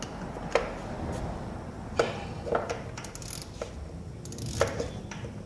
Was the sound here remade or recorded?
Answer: recorded